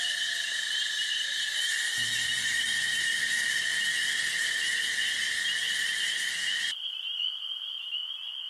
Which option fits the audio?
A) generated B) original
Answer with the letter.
A